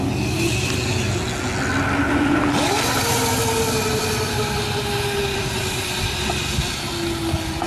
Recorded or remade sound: recorded